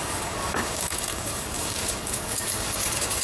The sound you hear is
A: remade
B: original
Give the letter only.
A